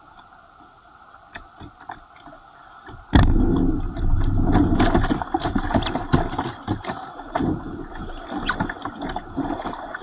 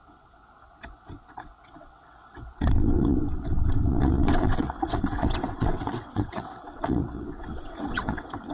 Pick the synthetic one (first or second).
second